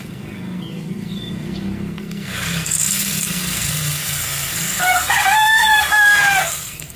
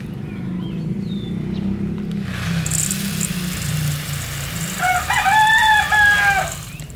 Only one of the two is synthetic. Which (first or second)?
first